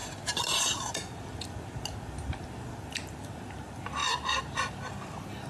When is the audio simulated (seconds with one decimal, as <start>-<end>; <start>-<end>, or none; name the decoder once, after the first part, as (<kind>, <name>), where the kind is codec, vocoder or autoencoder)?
none